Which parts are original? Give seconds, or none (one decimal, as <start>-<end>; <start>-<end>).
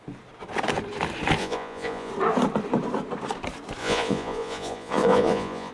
0.0-1.4; 2.1-3.8